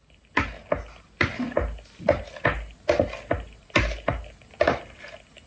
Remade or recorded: recorded